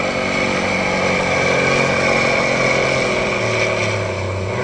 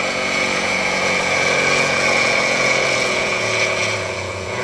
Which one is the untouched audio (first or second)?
first